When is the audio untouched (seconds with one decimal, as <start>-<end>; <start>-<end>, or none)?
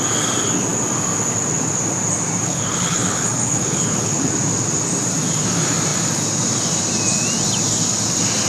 0.0-2.4; 4.3-8.5